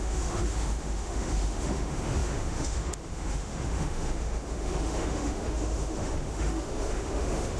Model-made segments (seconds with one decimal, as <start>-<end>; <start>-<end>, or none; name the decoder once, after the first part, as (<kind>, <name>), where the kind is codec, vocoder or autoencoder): 0.0-7.6 (autoencoder, DAC-VAE)